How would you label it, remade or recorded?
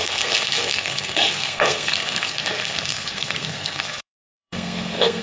remade